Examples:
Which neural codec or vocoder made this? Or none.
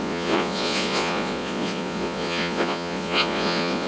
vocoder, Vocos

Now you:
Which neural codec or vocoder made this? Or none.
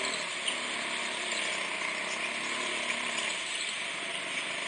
none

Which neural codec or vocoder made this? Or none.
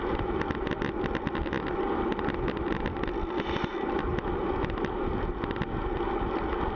none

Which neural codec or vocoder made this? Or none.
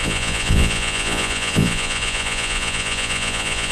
vocoder, Vocos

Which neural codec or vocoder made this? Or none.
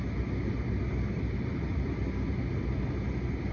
none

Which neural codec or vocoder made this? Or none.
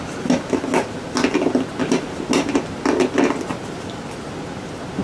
none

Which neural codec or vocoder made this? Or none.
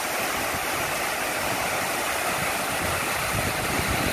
none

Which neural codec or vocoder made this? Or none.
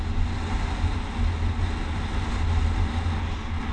none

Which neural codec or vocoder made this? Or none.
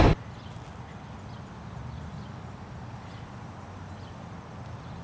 none